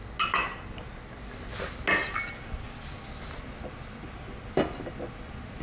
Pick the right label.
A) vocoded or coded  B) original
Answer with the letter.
B